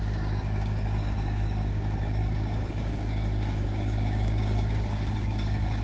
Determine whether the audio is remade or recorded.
remade